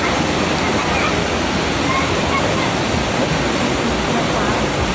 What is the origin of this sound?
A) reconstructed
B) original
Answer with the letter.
B